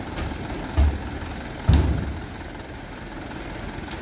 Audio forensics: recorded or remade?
recorded